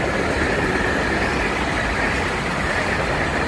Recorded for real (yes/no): yes